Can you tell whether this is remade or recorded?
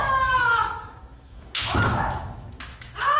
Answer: remade